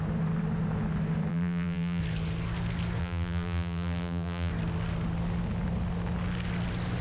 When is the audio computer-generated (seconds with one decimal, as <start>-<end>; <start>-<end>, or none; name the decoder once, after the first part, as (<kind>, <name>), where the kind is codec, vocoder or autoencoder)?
1.3-2.0 (vocoder, BigVGAN v2); 3.0-4.5